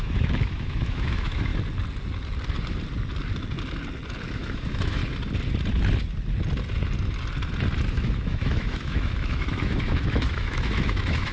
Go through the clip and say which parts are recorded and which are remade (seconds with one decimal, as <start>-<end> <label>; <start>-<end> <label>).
0.0-1.5 remade; 1.5-4.3 recorded; 4.3-5.0 remade; 5.0-7.9 recorded; 7.9-11.3 remade